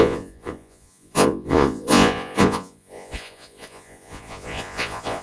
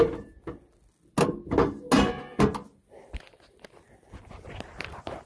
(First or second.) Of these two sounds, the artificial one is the first